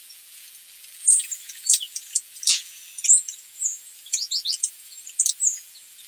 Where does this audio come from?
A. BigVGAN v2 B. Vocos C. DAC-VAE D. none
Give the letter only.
A